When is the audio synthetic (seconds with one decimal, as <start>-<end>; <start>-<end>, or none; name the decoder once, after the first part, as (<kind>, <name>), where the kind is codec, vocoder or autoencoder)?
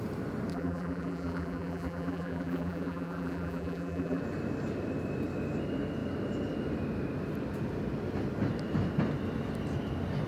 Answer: 0.5-4.2 (vocoder, BigVGAN v2)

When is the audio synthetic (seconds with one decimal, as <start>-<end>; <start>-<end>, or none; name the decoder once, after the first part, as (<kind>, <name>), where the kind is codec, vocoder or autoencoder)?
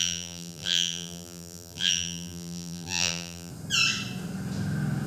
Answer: 0.0-3.5 (vocoder, BigVGAN v2)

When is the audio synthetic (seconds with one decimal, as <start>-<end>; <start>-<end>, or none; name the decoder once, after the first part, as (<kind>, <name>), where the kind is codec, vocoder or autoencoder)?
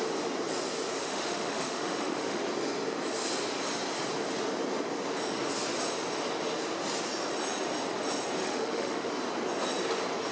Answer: 1.0-2.4 (autoencoder, DAC-VAE); 8.4-9.1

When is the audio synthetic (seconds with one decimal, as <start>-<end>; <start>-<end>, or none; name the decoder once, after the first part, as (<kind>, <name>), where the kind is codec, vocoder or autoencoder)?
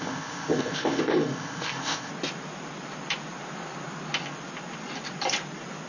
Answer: 0.0-2.1 (codec, ZipCodec)